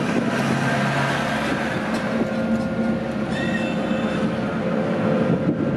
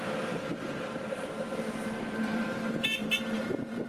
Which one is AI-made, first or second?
second